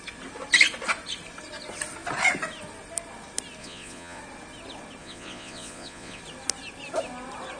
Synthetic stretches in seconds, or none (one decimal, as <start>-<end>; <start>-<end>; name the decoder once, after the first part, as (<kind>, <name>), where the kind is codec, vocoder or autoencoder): 3.6-4.2 (vocoder, Vocos); 5.0-6.2